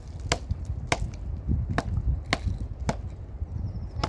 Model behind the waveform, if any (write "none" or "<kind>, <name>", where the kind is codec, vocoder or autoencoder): none